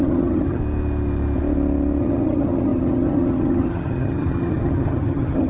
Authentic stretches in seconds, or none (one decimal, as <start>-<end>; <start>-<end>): 0.6-2.0